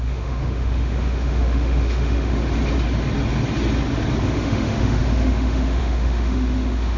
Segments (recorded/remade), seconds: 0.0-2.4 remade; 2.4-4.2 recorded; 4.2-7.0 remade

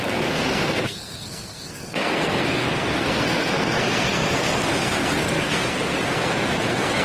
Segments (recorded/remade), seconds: 0.0-7.0 remade

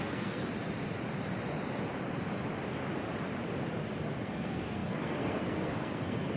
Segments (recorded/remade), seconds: 0.0-0.4 remade; 0.4-4.2 recorded; 4.2-6.4 remade

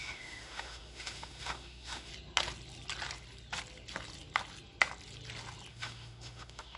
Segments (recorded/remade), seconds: 0.0-2.1 remade; 2.1-5.7 recorded; 5.7-6.8 remade

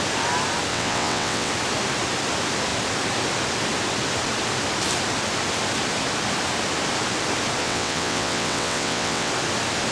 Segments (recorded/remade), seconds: 0.0-0.7 recorded; 0.7-1.5 remade; 1.5-7.6 recorded; 7.6-9.3 remade; 9.3-9.9 recorded

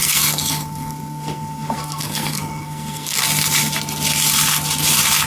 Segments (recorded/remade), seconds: 0.0-3.2 remade; 3.2-5.3 recorded

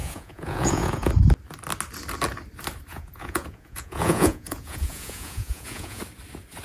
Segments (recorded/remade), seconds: 0.0-1.1 remade; 1.1-2.9 recorded; 2.9-6.0 remade; 6.0-6.6 recorded